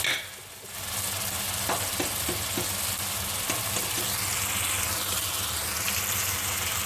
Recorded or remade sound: recorded